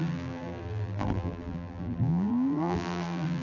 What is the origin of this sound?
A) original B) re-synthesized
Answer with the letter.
B